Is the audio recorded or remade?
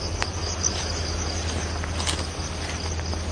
recorded